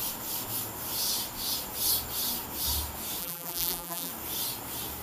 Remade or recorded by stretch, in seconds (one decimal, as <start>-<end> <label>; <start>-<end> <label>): 0.0-3.2 recorded; 3.2-4.1 remade; 4.1-5.0 recorded